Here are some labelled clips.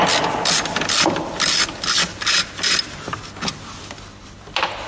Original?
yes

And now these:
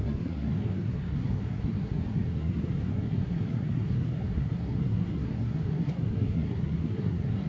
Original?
no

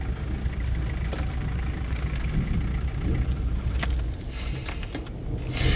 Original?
yes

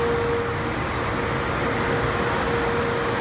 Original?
yes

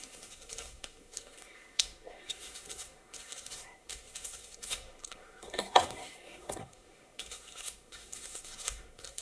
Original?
no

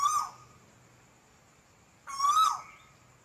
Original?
yes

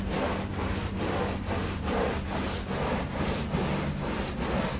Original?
yes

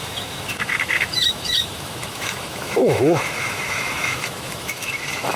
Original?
no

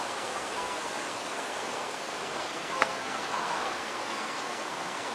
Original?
no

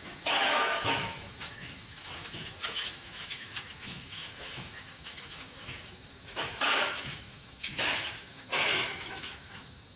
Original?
no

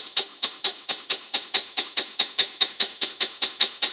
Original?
no